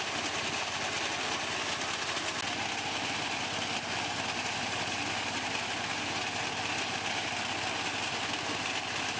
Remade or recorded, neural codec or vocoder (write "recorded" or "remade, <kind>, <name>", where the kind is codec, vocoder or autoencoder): recorded